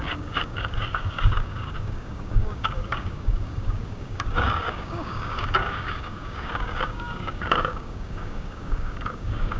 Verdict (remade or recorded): remade